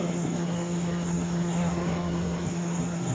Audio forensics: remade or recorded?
remade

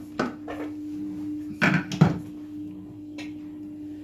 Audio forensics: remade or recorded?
recorded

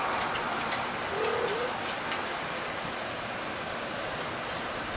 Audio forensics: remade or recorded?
recorded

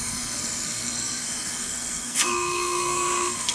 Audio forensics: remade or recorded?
remade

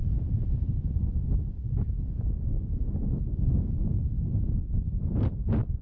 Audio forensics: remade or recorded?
recorded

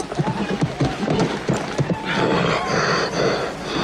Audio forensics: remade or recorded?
recorded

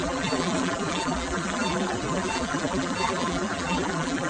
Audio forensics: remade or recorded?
remade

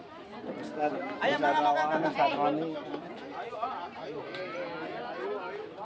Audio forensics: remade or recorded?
recorded